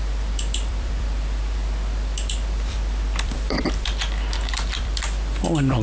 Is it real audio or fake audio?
fake